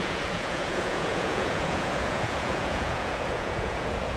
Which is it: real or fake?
fake